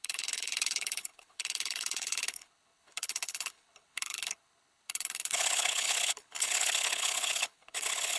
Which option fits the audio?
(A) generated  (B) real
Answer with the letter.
A